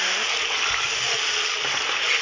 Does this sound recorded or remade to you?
recorded